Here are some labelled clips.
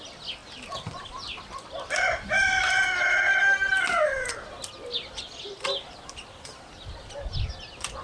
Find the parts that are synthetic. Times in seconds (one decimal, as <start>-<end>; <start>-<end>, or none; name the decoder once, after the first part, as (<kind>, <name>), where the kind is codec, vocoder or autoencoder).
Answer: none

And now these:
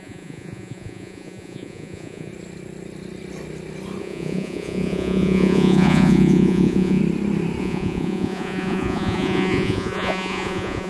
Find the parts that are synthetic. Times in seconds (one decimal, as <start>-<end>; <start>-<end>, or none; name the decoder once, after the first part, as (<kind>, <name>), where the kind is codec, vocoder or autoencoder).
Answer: 0.0-2.3 (vocoder, Vocos); 4.0-7.0; 7.6-10.9

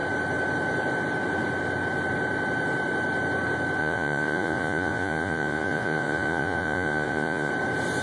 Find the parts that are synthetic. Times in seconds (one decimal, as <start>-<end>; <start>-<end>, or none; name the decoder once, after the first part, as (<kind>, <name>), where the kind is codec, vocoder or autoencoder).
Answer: 3.8-7.5 (vocoder, Vocos)

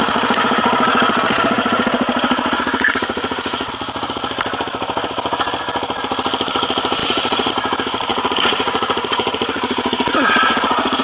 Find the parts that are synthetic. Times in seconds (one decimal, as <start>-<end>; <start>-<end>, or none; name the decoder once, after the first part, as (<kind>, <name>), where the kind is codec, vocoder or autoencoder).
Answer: 0.0-3.7 (vocoder, Vocos); 7.0-7.5; 8.1-11.0